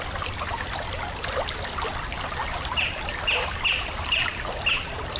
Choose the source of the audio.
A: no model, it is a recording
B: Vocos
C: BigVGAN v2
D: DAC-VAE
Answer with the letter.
A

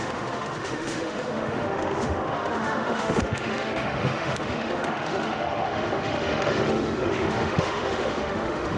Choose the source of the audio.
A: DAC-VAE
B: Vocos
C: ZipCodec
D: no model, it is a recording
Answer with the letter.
A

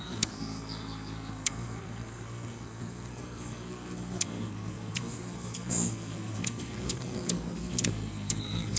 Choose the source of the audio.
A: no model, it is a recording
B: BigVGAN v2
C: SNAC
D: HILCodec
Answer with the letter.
C